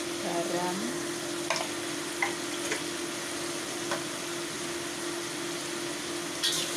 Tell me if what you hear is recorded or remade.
recorded